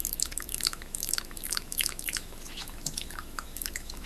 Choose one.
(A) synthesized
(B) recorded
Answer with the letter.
A